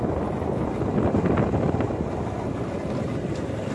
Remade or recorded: recorded